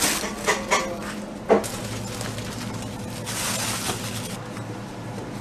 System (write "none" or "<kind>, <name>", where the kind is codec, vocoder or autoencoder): none